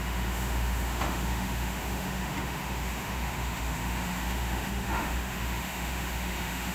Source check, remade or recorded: remade